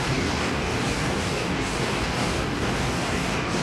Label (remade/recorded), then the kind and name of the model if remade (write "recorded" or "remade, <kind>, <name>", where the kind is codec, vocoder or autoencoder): remade, codec, DAC